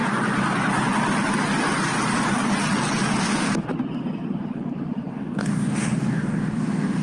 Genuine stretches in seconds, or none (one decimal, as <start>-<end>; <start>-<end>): 0.0-3.2; 3.7-5.1